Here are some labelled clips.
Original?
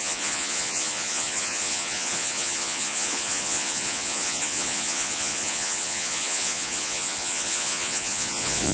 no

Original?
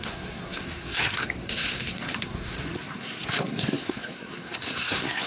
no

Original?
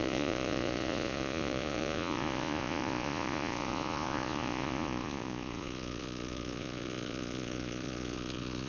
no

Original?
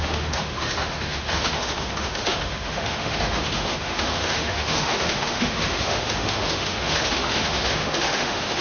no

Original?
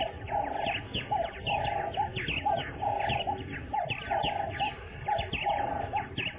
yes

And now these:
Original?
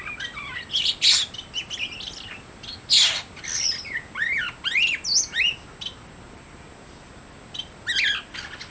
yes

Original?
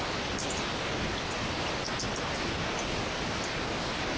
yes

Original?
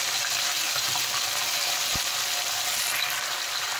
yes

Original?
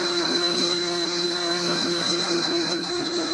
no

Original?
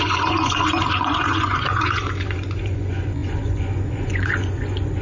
no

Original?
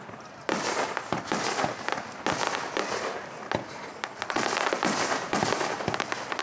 yes